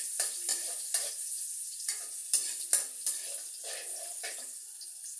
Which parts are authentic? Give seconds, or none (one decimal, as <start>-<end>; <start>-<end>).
2.2-5.2